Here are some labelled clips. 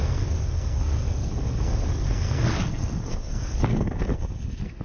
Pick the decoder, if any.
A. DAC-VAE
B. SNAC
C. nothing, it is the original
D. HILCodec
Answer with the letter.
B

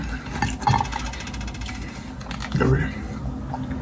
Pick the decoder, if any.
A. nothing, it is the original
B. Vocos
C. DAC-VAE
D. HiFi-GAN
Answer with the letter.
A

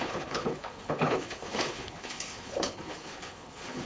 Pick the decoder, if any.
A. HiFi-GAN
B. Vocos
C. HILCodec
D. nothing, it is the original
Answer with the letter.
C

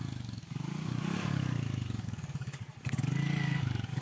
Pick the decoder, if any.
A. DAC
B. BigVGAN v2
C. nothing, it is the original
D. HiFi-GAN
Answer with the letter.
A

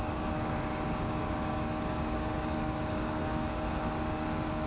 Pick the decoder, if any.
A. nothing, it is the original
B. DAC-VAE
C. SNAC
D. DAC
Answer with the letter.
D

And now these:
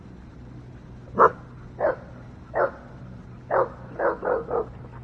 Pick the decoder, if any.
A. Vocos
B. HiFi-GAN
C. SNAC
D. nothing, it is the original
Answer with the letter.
D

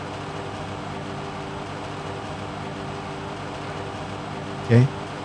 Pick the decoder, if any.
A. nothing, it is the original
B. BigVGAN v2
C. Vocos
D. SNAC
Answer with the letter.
A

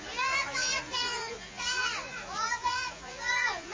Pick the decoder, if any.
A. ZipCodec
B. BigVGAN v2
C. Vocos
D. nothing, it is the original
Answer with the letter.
C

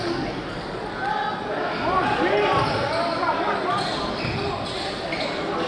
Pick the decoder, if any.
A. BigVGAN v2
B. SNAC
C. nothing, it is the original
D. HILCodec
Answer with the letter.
C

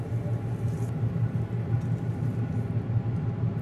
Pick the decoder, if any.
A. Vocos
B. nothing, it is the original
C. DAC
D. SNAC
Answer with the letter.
B